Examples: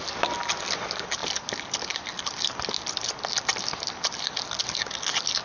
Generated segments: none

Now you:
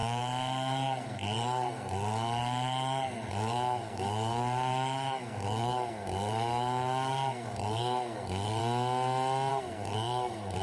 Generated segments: 0.0-8.6 (codec, SNAC); 9.5-10.6